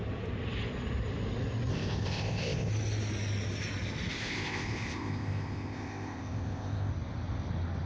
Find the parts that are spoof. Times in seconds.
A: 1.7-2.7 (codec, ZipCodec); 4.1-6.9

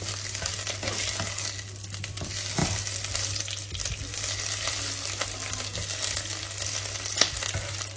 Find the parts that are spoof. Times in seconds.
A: none